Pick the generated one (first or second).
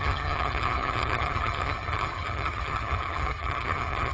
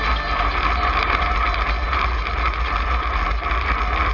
first